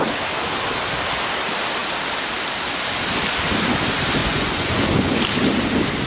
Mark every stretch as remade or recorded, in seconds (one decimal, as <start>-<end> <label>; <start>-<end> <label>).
0.0-4.2 recorded; 4.2-5.2 remade; 5.2-6.1 recorded